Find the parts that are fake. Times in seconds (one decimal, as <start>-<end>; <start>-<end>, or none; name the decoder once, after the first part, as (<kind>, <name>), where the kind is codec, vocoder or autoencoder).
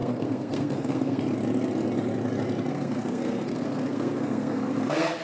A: 0.0-1.2 (codec, SNAC); 2.7-5.2